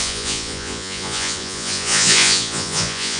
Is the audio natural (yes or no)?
no